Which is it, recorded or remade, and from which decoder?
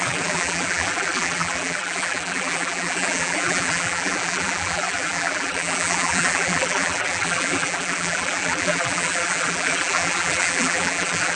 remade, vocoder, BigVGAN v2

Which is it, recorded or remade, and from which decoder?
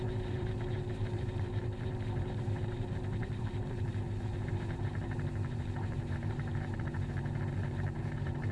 remade, vocoder, BigVGAN v2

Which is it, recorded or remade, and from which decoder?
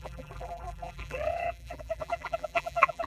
remade, vocoder, BigVGAN v2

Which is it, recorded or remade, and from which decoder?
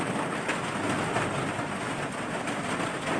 recorded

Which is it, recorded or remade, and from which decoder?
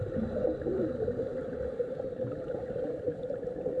remade, vocoder, BigVGAN v2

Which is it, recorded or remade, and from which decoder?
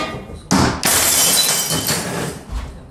recorded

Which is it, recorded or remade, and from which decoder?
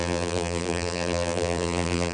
remade, vocoder, BigVGAN v2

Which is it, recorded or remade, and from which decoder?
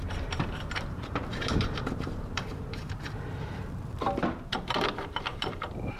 remade, vocoder, BigVGAN v2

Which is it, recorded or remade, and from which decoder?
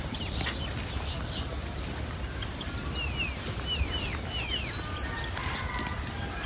recorded